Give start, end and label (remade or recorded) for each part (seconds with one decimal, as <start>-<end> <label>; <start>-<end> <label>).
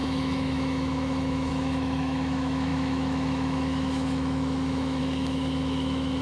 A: 0.0-6.2 remade